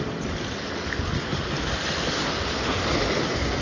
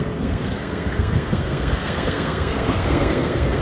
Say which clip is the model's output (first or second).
second